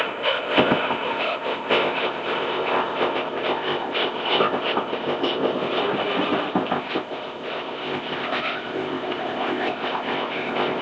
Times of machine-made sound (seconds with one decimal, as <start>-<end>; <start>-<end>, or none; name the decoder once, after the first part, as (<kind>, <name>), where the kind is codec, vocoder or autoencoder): 0.0-5.8 (codec, ZipCodec); 6.5-10.8